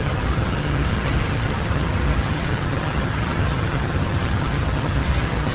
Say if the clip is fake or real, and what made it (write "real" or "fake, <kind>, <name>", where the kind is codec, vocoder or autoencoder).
fake, vocoder, HiFi-GAN